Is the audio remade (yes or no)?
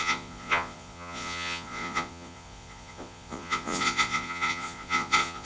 yes